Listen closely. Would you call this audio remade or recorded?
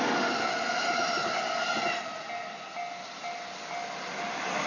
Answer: recorded